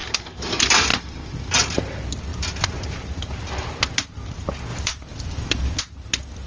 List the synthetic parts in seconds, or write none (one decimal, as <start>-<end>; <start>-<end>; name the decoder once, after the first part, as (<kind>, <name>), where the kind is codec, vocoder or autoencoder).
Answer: 0.9-1.6 (vocoder, BigVGAN v2); 2.3-3.2; 4.7-5.8